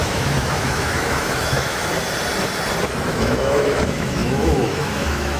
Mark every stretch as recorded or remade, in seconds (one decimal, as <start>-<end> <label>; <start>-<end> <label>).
0.0-1.9 remade; 1.9-3.1 recorded; 3.1-5.4 remade